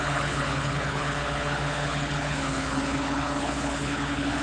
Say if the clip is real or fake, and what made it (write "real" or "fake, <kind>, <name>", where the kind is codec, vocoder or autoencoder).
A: fake, codec, HILCodec